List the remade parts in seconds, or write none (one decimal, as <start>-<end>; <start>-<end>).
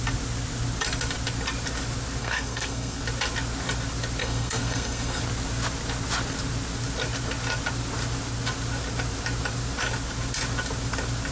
2.2-3.0; 4.2-5.2